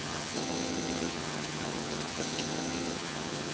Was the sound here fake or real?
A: fake